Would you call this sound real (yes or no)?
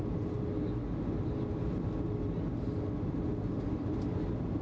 yes